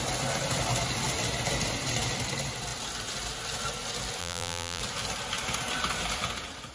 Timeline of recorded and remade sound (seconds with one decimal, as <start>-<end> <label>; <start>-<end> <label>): 0.0-4.2 recorded; 4.2-4.8 remade; 4.8-6.7 recorded